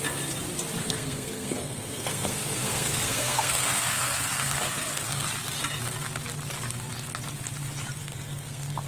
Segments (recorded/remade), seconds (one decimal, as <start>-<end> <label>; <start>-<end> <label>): 0.0-0.8 recorded; 0.8-5.3 remade; 5.3-8.0 recorded; 8.0-8.9 remade